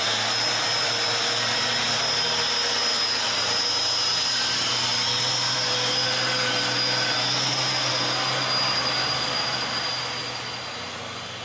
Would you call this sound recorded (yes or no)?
yes